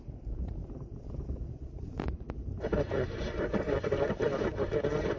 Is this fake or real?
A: fake